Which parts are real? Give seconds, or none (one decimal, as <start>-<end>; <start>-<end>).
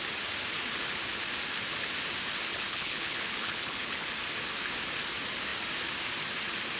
0.0-2.5; 4.1-6.8